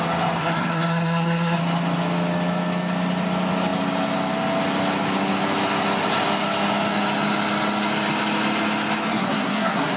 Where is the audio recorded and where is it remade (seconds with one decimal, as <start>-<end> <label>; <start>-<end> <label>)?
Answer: 0.0-0.4 recorded; 0.4-1.6 remade; 1.6-9.1 recorded; 9.1-10.0 remade